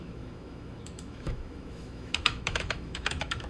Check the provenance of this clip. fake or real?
fake